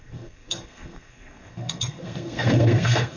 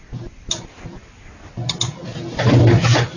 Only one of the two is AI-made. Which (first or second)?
first